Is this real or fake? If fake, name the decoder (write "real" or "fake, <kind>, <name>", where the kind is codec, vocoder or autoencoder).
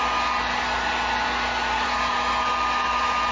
real